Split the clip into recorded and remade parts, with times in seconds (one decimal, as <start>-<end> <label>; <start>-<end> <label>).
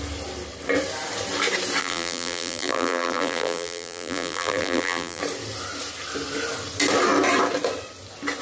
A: 0.0-1.8 recorded; 1.8-5.2 remade; 5.2-8.4 recorded